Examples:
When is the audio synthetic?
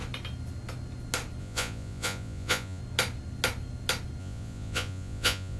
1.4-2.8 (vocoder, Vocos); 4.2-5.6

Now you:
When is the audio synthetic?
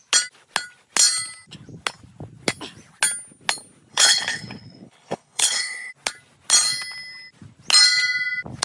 3.9-5.9 (codec, HILCodec)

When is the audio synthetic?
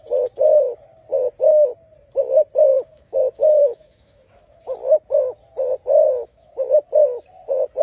2.7-4.6 (autoencoder, DAC-VAE); 6.0-6.7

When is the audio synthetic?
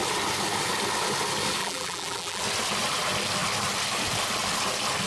1.6-2.4 (vocoder, BigVGAN v2)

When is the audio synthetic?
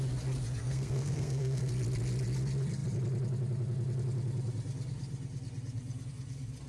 0.6-1.7 (codec, SNAC)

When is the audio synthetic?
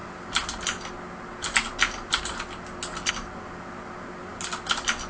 none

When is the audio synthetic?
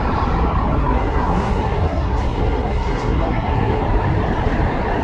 0.8-3.8 (codec, SNAC)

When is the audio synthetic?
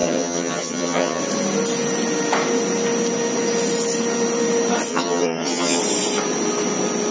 0.0-1.2 (vocoder, HiFi-GAN); 4.9-5.8